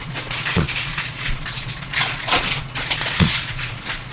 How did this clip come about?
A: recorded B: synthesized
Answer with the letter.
B